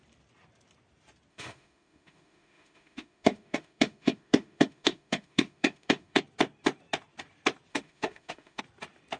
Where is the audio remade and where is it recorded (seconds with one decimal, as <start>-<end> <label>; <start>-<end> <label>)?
0.0-1.3 recorded; 1.3-6.2 remade; 6.2-7.7 recorded; 7.7-8.6 remade; 8.6-9.2 recorded